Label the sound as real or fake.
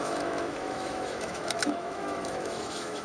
fake